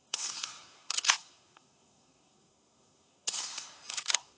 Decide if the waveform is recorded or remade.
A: remade